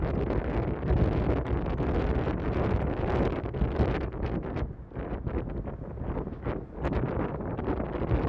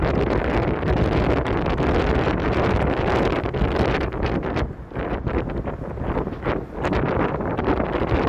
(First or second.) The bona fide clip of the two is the first